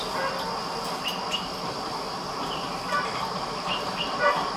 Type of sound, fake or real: real